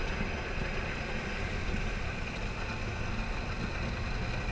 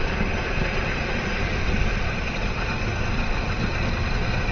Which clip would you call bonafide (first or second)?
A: first